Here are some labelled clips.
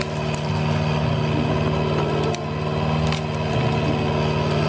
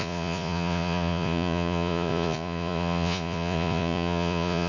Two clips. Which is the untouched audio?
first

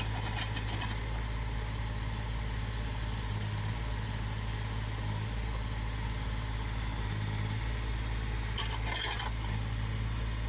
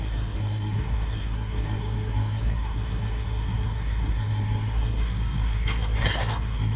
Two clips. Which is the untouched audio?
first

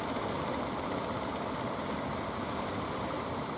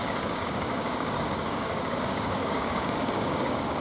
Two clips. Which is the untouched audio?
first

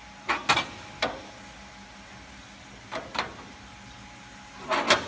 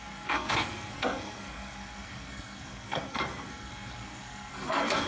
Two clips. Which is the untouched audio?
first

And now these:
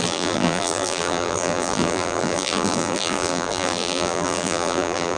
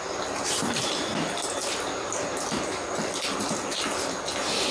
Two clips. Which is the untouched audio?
second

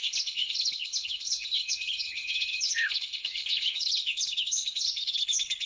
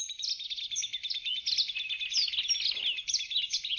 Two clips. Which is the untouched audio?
second